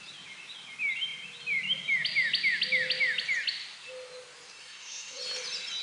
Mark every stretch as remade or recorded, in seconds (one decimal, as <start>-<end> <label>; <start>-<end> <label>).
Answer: 0.0-4.6 recorded; 4.6-5.2 remade; 5.2-5.8 recorded